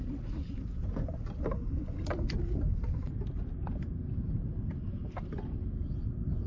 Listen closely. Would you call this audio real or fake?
real